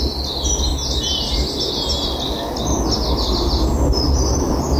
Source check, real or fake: real